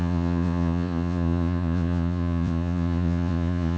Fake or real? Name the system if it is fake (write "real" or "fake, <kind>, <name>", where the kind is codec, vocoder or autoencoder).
fake, vocoder, Vocos